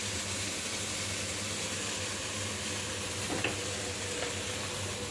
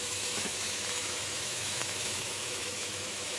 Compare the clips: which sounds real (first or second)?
first